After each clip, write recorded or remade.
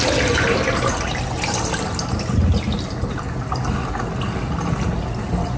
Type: recorded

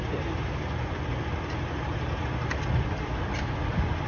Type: recorded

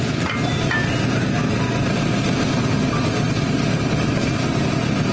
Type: recorded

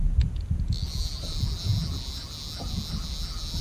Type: recorded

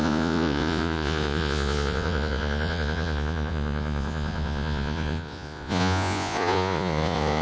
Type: remade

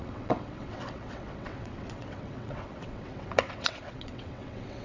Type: remade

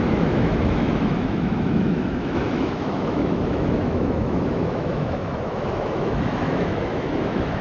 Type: remade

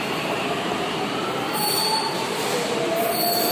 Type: remade